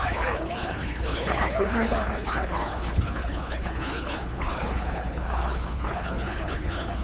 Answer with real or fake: fake